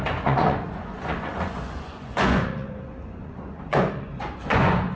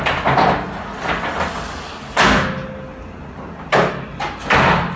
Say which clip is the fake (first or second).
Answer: first